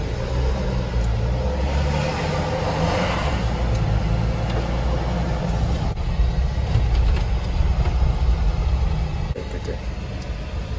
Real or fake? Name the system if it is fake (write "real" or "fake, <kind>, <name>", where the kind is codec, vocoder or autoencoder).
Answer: real